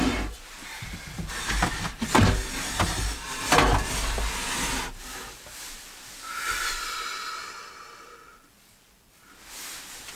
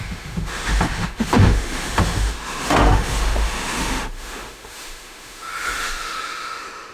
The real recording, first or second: first